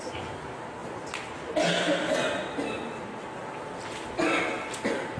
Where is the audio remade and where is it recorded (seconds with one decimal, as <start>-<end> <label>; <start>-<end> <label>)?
0.0-5.2 recorded